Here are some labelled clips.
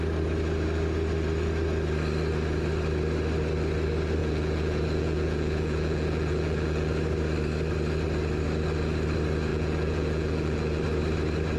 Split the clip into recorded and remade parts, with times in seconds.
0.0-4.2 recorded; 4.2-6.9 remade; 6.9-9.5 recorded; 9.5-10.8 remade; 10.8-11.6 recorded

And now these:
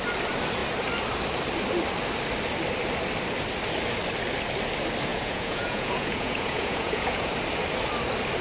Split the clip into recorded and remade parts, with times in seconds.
0.0-5.1 recorded; 5.1-7.3 remade; 7.3-8.4 recorded

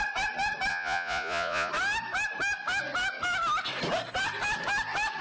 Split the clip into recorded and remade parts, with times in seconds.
0.0-0.7 recorded; 0.7-1.7 remade; 1.7-5.2 recorded

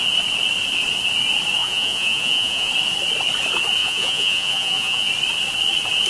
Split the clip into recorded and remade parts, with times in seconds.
0.0-1.6 recorded; 1.6-2.7 remade; 2.7-3.8 recorded; 3.8-5.1 remade; 5.1-6.1 recorded

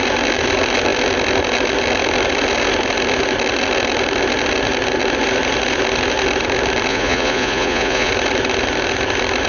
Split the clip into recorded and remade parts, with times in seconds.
0.0-6.9 recorded; 6.9-8.1 remade; 8.1-9.5 recorded

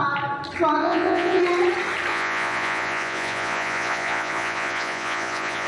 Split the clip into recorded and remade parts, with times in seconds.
0.0-0.8 recorded; 0.8-1.4 remade; 1.4-2.1 recorded; 2.1-5.7 remade

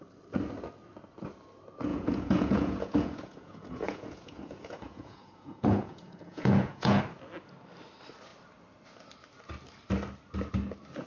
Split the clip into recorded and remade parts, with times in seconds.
0.0-1.9 recorded; 1.9-7.0 remade; 7.0-11.1 recorded

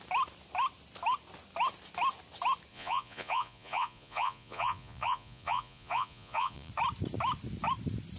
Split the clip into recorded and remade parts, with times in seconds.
0.0-2.7 recorded; 2.7-6.7 remade; 6.7-8.2 recorded